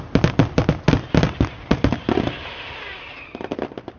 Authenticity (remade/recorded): recorded